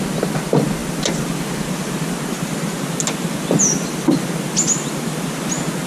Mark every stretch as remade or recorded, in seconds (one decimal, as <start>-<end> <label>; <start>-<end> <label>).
0.0-5.9 recorded